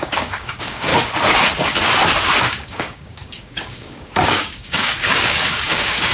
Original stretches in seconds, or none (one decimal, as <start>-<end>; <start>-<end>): 0.9-2.4